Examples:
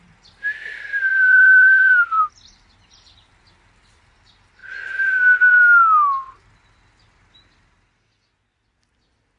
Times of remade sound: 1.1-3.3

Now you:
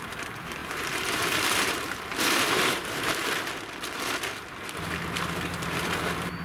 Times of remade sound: 0.6-3.1

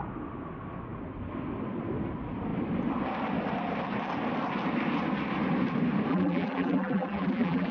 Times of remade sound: 6.1-7.7

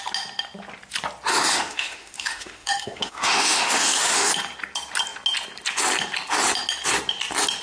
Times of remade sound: 1.3-4.3

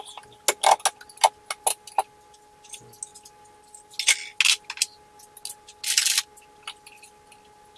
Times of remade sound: none

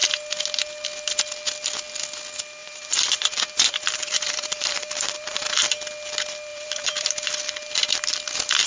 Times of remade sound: 2.6-5.5; 6.5-7.1